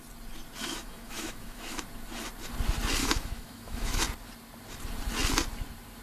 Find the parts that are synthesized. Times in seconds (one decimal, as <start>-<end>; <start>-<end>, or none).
0.6-1.8; 3.0-4.0